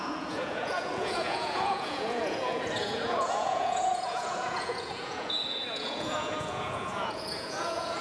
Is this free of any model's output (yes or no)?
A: no